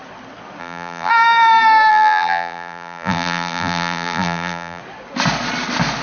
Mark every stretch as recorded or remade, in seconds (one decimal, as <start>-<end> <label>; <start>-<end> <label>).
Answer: 0.0-0.6 recorded; 0.6-1.1 remade; 1.1-1.9 recorded; 1.9-4.8 remade; 4.8-6.0 recorded

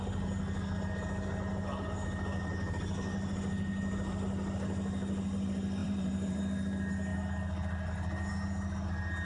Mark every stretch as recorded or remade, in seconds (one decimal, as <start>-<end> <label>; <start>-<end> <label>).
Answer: 0.0-5.8 recorded; 5.8-6.4 remade; 6.4-9.3 recorded

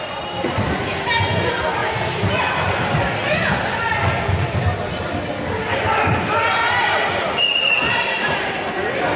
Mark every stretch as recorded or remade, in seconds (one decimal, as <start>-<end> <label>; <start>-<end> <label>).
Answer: 0.0-9.2 recorded

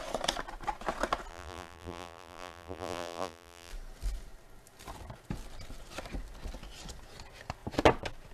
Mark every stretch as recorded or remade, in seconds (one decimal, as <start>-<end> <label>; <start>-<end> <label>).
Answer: 0.0-1.3 recorded; 1.3-3.7 remade; 3.7-8.3 recorded